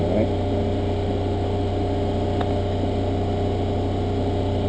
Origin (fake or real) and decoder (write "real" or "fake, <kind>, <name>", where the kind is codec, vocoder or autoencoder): real